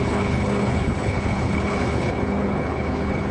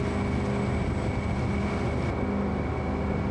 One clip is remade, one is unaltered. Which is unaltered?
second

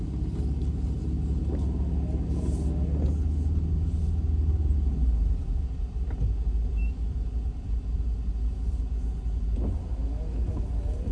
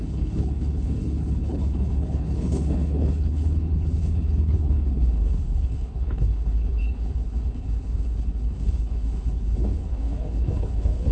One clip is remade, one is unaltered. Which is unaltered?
first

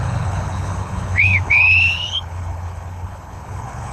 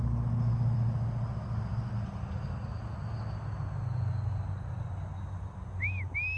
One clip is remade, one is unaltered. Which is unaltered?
second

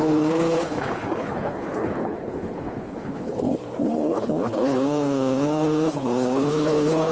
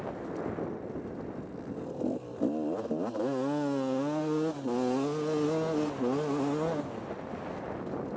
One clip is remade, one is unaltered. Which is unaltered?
second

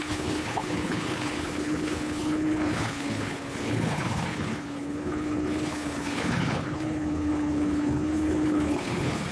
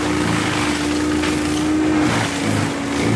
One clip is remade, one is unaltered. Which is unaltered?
second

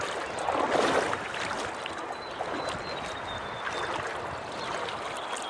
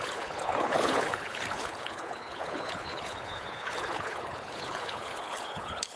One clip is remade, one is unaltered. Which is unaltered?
first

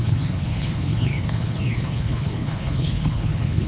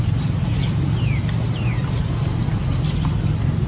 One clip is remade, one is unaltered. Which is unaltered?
second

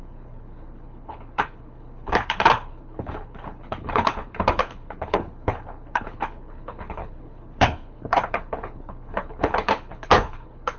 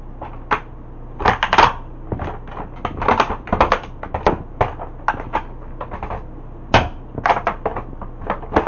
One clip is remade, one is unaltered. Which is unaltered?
second